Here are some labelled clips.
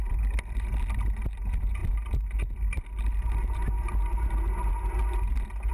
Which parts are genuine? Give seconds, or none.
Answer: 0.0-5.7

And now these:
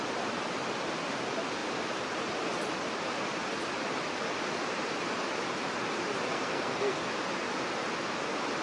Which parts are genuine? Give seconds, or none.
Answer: 0.0-6.3; 7.0-8.6

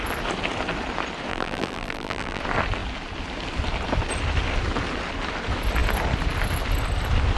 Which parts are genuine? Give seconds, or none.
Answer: 0.0-1.3; 2.4-7.4